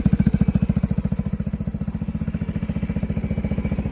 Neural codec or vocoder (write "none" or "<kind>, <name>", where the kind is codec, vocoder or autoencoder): none